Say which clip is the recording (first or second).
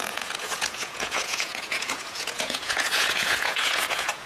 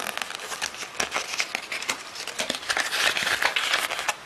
second